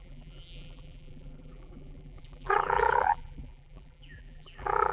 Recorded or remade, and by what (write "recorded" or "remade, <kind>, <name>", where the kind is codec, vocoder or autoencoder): remade, vocoder, BigVGAN v2